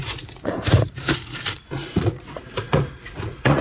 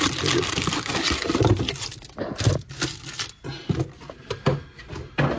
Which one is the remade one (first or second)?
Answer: first